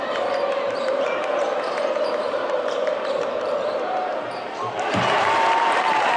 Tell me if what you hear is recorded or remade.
remade